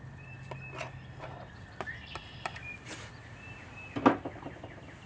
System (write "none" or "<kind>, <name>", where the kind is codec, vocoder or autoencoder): none